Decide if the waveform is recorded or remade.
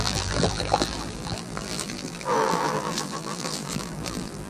remade